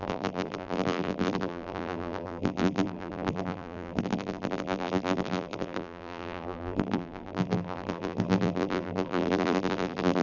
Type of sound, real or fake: fake